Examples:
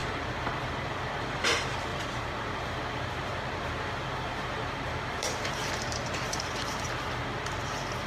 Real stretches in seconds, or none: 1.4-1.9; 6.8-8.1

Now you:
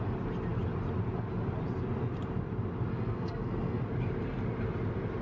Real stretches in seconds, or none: 0.0-2.9; 3.8-5.2

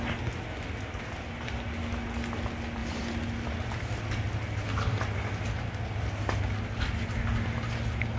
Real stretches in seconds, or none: 0.0-8.2

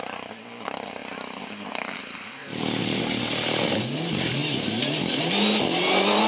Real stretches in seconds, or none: 0.0-2.4; 3.0-6.3

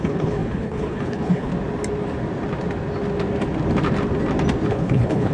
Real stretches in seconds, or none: 1.5-4.7